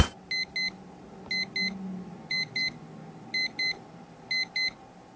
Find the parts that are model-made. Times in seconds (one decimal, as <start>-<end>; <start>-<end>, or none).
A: none